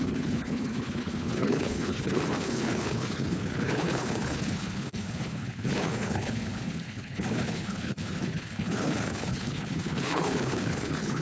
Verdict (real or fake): fake